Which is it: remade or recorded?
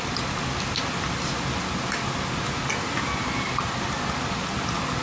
recorded